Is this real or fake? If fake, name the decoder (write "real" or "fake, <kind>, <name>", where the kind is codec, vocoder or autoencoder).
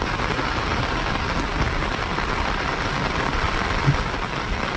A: real